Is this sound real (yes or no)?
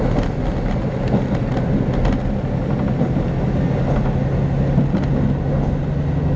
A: yes